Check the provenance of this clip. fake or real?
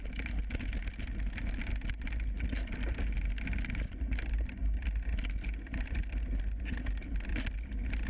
real